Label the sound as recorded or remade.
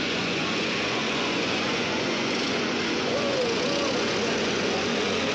remade